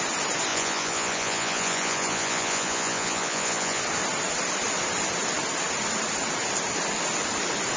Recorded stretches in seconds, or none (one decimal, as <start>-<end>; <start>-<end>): 0.0-0.5; 3.8-7.8